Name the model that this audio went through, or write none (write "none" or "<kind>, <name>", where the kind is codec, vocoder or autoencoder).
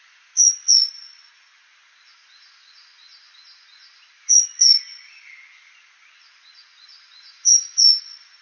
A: vocoder, Vocos